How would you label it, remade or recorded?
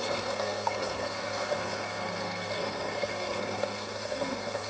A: remade